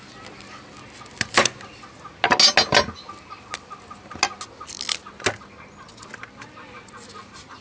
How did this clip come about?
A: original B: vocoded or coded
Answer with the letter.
A